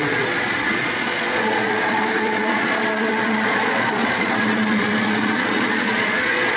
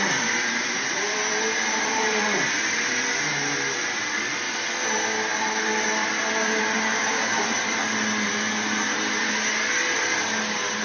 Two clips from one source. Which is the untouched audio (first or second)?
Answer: second